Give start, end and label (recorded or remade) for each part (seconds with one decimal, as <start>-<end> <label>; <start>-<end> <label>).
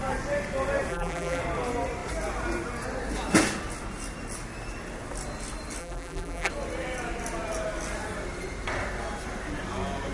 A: 0.0-0.9 recorded; 0.9-1.4 remade; 1.4-5.8 recorded; 5.8-6.5 remade; 6.5-10.1 recorded